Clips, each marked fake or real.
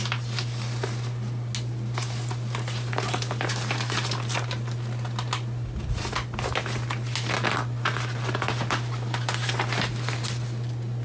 real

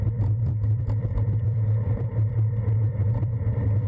fake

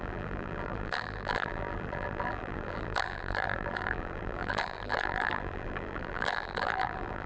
fake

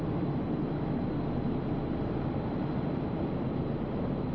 fake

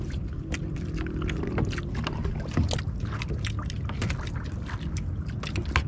real